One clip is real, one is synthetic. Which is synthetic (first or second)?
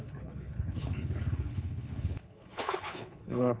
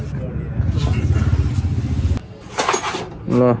first